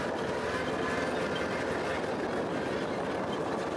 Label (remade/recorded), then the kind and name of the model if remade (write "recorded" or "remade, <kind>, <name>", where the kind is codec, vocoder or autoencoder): recorded